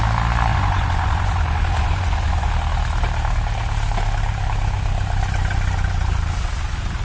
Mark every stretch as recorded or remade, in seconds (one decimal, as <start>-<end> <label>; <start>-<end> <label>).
0.0-0.5 recorded; 0.5-2.5 remade; 2.5-7.0 recorded